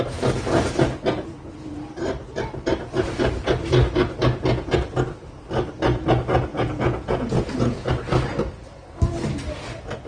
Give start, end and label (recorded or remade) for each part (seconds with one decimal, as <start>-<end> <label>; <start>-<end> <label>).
0.0-6.5 recorded; 6.5-7.9 remade; 7.9-10.1 recorded